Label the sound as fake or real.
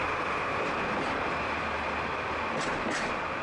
real